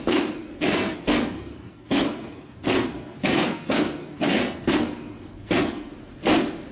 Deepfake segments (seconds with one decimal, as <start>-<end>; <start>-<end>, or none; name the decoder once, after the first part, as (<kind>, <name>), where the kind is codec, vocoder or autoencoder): 0.0-5.9 (codec, SNAC)

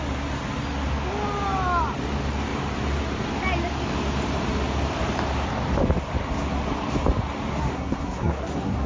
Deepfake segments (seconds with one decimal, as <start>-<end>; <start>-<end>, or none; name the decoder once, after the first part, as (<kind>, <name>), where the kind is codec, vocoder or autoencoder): 7.7-8.9 (codec, SNAC)

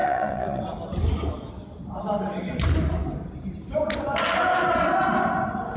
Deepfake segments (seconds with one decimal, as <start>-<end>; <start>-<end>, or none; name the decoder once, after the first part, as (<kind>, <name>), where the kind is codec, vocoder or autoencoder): 0.0-0.6 (vocoder, Vocos)

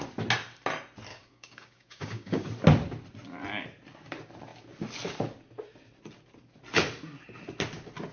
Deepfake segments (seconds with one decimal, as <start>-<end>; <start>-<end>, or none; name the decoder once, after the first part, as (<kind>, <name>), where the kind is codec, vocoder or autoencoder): 1.1-2.5 (codec, DAC)

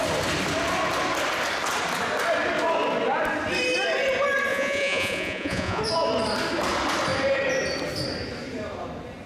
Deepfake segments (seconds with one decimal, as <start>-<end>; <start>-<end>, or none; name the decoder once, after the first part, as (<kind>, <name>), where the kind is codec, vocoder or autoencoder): 4.5-5.8 (vocoder, Vocos)